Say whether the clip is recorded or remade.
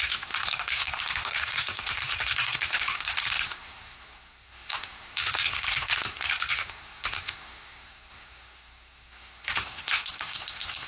remade